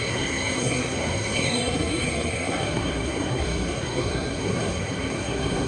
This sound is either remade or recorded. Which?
remade